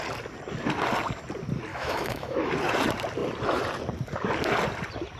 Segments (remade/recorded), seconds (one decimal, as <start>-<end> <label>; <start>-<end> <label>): 0.0-1.7 recorded; 1.7-2.5 remade; 2.5-5.2 recorded